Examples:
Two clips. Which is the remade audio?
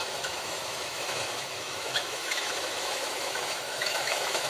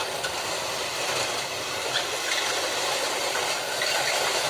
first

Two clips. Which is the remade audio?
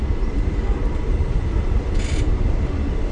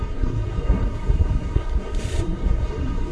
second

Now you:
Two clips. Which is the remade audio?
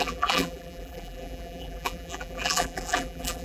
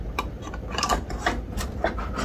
first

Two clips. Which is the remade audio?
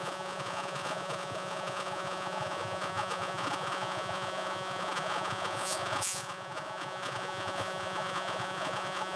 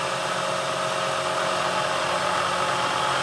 first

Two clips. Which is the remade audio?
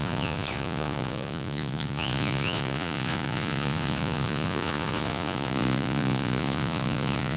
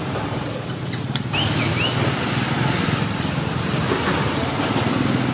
first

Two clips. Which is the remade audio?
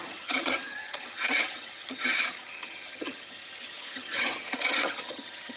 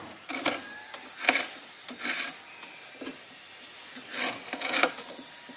first